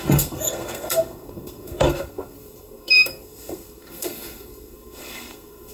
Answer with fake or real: fake